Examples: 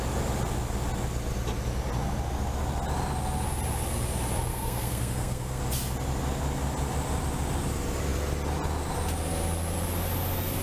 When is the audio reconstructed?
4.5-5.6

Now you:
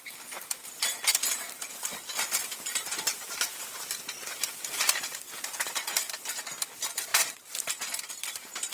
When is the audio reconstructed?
1.7-6.4; 7.1-7.6

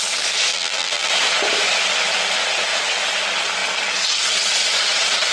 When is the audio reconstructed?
0.5-1.1

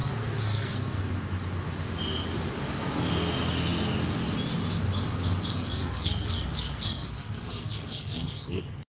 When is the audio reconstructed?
0.0-1.1; 5.5-8.9

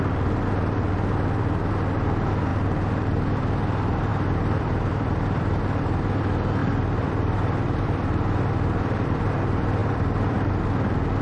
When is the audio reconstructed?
2.5-3.4; 4.1-5.6; 6.6-9.3; 9.8-10.5

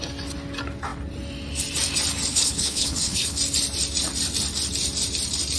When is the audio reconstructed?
2.3-3.4

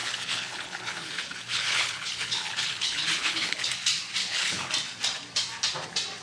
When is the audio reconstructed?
0.0-3.7; 4.2-4.7

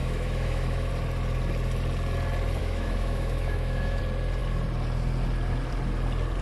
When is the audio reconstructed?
0.0-0.9; 2.6-4.0